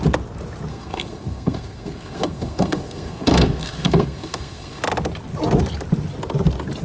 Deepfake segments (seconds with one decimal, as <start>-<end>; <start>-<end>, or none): 0.7-4.8